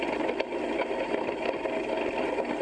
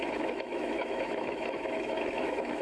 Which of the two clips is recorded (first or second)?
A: first